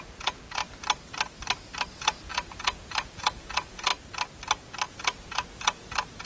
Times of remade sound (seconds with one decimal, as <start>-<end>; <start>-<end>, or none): 0.0-0.6; 1.9-3.9; 4.9-6.2